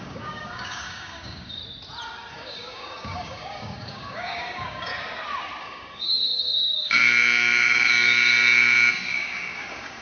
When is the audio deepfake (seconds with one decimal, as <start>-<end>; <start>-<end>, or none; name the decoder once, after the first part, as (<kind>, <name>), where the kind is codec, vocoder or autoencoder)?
0.0-1.6 (codec, DAC); 2.3-4.9; 5.6-10.0